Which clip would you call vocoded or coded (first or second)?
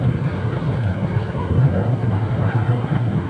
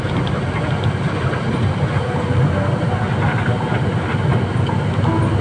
first